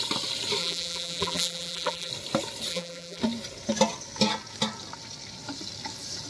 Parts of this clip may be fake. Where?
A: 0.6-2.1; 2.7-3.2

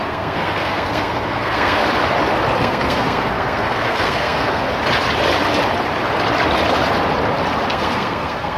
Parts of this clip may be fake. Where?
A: 0.0-1.8; 2.6-4.7; 7.7-8.6